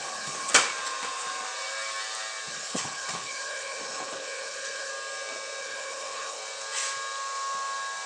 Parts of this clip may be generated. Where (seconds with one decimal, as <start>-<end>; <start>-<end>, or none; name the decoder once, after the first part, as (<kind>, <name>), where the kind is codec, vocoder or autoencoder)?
0.0-0.5 (codec, HILCodec); 2.5-4.9; 5.6-6.4